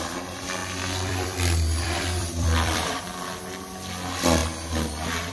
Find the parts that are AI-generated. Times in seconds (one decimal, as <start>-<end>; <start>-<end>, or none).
0.6-3.1